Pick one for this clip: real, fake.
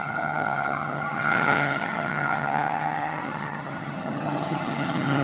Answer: fake